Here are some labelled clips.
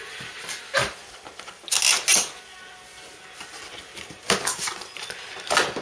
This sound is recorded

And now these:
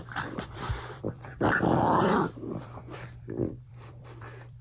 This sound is remade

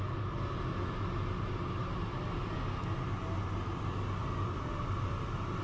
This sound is recorded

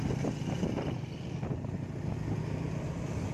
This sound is recorded